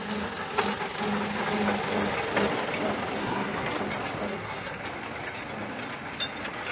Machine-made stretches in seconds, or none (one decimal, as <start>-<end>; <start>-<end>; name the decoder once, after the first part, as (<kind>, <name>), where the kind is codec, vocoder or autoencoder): 3.2-3.8 (codec, SNAC); 4.3-4.8

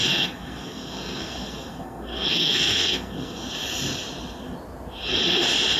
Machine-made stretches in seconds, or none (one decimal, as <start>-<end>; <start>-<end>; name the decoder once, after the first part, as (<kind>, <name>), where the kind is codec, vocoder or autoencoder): 0.0-3.5 (codec, SNAC)

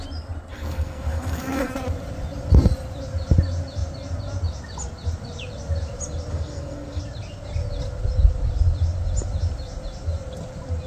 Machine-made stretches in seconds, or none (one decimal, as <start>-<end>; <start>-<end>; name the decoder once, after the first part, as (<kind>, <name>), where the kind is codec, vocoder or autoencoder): 0.5-1.7 (codec, SNAC); 6.3-7.0